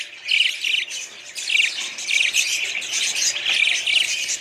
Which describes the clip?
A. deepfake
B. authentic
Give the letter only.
B